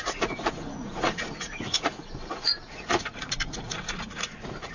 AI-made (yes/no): yes